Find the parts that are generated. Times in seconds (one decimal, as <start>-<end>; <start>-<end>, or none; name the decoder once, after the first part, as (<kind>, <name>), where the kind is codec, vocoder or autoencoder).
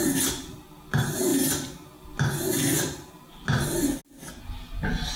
none